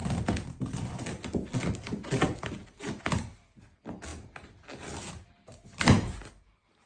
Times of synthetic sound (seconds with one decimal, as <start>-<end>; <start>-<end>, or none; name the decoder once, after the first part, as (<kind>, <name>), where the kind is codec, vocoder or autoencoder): none